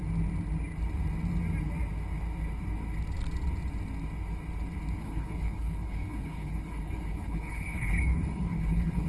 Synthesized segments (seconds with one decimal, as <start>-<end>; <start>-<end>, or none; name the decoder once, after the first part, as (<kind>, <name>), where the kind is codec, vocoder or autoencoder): 5.0-9.1 (codec, HILCodec)